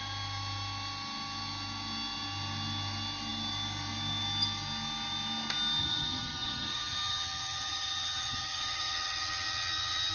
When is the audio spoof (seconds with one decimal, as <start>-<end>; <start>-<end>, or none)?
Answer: 5.8-10.1